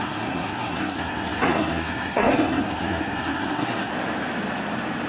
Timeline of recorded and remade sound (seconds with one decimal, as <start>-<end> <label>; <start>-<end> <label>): 0.0-3.9 remade; 3.9-5.1 recorded